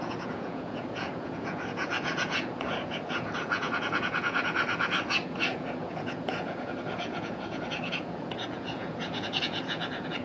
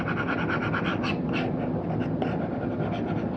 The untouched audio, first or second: second